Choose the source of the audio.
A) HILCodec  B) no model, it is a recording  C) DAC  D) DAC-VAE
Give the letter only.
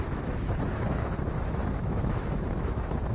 D